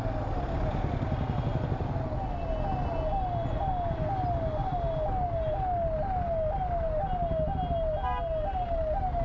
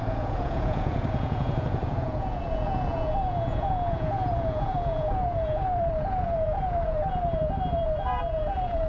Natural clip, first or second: first